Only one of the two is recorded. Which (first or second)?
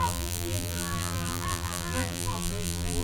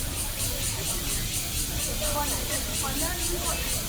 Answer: second